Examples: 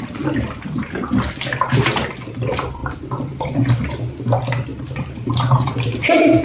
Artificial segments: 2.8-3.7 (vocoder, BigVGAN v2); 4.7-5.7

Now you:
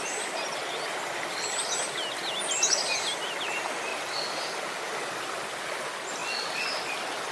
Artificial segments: none